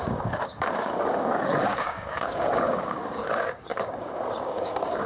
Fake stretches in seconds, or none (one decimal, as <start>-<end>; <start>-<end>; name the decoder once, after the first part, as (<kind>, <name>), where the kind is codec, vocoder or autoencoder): 0.0-5.1 (codec, DAC)